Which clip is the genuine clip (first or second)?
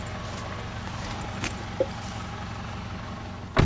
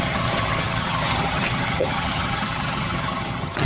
first